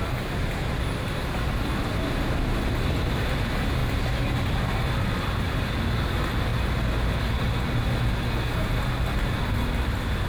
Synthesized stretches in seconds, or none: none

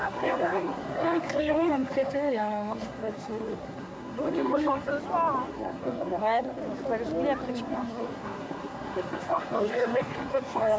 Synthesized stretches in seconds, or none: 0.0-4.9 (codec, SNAC); 5.5-6.6; 7.5-10.8

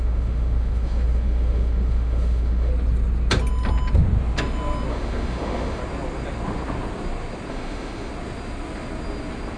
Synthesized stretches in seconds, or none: 0.0-2.7 (autoencoder, DAC-VAE); 4.9-5.8; 7.5-8.1

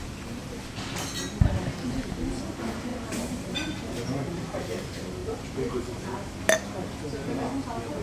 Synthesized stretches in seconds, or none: 2.9-4.6 (vocoder, BigVGAN v2); 5.2-6.1

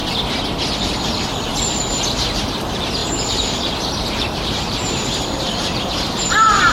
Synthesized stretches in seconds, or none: 0.7-1.5 (vocoder, BigVGAN v2); 2.1-6.7